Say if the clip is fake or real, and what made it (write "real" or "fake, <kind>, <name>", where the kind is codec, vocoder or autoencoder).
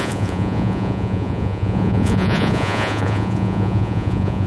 fake, vocoder, Vocos